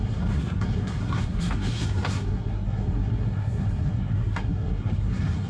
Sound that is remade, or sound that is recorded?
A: remade